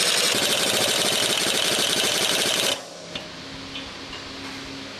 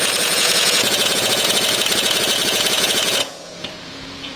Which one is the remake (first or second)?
second